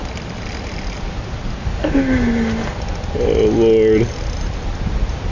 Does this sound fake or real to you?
real